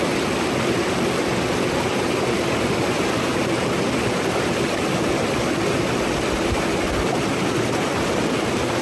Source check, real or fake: real